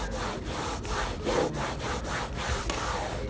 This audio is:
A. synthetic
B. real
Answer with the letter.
B